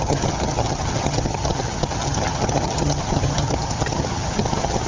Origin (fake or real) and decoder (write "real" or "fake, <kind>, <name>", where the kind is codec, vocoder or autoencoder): fake, vocoder, HiFi-GAN